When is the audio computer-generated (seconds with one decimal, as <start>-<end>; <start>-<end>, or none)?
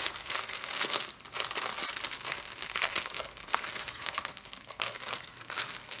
0.0-1.1; 2.1-6.0